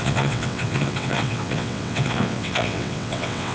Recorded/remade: remade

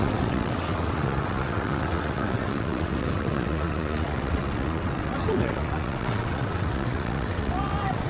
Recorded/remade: remade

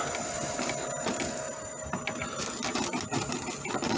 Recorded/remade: recorded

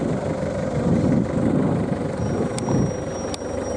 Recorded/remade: recorded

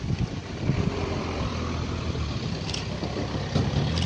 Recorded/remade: recorded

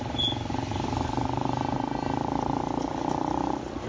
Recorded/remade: recorded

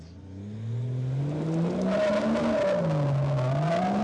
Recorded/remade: recorded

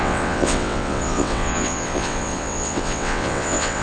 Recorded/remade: remade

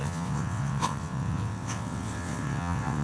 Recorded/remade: remade